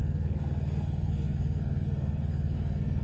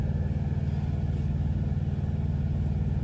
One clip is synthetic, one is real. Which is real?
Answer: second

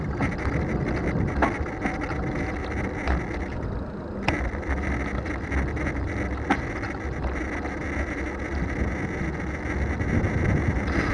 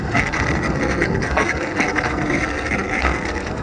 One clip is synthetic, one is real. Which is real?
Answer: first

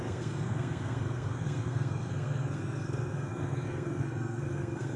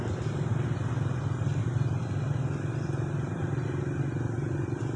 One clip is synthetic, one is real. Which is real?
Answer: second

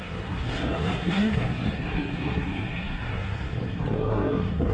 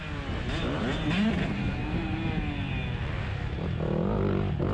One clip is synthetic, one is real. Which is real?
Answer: second